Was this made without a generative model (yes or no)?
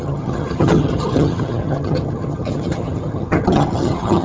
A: no